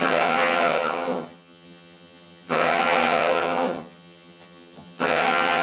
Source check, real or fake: fake